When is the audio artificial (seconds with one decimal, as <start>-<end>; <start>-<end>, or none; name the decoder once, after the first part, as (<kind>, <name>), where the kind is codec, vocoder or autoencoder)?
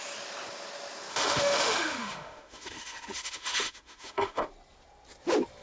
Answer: 1.1-4.5 (autoencoder, DAC-VAE)